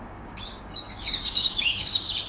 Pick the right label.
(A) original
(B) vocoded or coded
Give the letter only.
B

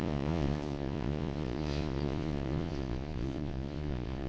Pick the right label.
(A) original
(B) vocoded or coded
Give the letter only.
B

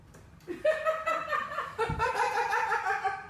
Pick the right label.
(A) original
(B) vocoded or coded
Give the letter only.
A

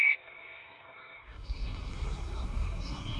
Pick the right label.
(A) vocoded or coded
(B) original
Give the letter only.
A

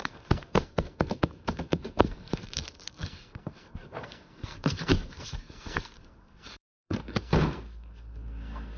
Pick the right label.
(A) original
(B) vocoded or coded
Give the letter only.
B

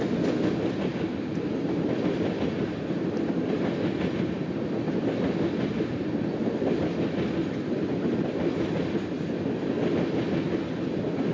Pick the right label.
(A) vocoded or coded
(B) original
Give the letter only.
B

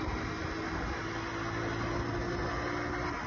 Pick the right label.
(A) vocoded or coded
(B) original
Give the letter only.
B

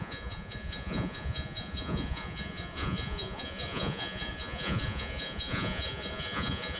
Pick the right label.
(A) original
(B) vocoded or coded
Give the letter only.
B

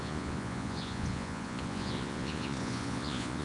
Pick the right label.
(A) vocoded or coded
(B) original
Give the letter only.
A